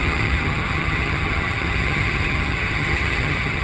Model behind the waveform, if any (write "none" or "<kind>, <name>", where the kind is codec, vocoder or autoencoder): vocoder, HiFi-GAN